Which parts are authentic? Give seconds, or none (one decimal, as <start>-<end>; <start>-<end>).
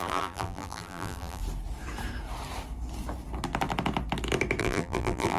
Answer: 1.4-4.6